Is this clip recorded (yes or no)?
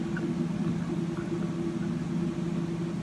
yes